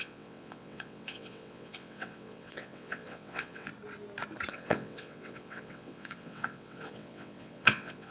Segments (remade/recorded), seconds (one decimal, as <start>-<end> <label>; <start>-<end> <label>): 0.0-3.7 remade; 3.7-4.5 recorded; 4.5-8.1 remade